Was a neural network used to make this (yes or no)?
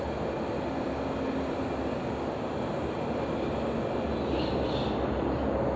no